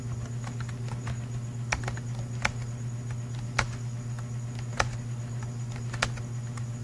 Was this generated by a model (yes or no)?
no